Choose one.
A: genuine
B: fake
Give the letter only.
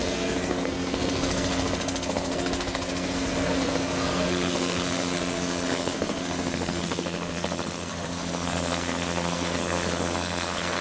B